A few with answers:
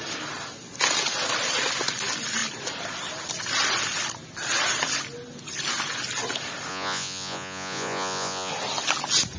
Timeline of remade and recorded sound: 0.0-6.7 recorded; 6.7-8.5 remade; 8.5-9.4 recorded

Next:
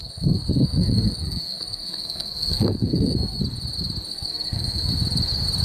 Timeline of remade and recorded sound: 0.0-3.4 remade; 3.4-4.1 recorded; 4.1-4.9 remade; 4.9-5.6 recorded

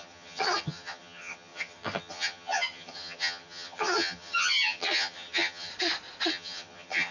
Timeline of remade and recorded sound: 0.0-5.7 remade; 5.7-6.3 recorded; 6.3-7.1 remade

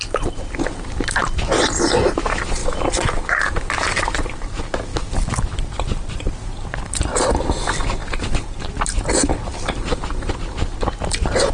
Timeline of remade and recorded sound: 0.0-2.6 recorded; 2.6-7.5 remade; 7.5-8.0 recorded; 8.0-8.7 remade; 8.7-11.5 recorded